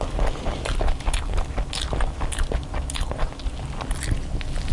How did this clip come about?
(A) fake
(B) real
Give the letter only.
B